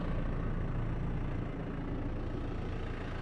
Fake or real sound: real